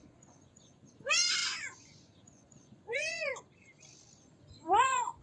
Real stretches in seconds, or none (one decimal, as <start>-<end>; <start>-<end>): 3.3-4.2